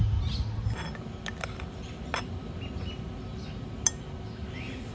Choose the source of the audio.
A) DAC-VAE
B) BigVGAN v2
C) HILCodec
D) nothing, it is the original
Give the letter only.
D